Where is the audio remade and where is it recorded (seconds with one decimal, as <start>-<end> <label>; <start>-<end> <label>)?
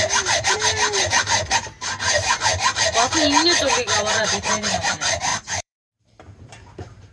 0.0-2.5 remade; 2.5-3.6 recorded; 3.6-7.1 remade